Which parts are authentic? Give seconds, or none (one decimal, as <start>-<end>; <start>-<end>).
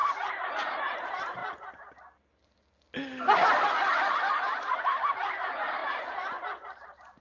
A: 1.4-4.4